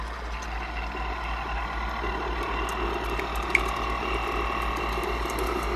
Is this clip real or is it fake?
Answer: real